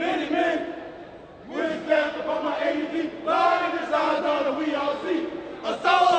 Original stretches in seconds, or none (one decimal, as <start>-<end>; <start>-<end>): 0.0-1.7; 2.2-6.2